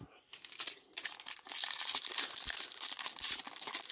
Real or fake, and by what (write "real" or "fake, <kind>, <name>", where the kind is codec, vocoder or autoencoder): fake, vocoder, BigVGAN v2